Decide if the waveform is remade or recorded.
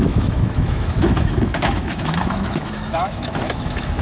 remade